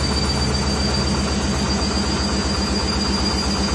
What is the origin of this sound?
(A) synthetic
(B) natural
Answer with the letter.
B